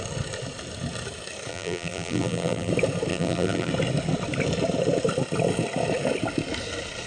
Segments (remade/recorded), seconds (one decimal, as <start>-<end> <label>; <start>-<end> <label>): 0.0-1.5 recorded; 1.5-2.7 remade; 2.7-3.1 recorded; 3.1-3.7 remade; 3.7-7.1 recorded